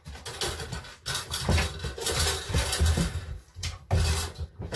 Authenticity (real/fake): real